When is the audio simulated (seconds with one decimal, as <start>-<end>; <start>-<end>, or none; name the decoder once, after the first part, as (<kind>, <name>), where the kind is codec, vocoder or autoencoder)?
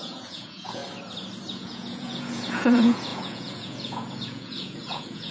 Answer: 0.0-0.8 (vocoder, Vocos); 1.5-5.3